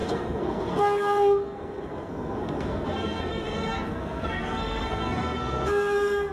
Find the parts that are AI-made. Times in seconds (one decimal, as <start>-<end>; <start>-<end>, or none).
0.0-6.3